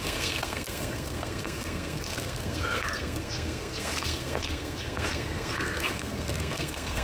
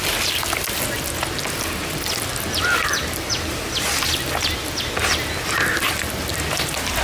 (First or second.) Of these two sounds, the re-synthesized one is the first